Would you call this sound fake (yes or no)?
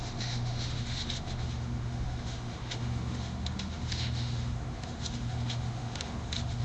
yes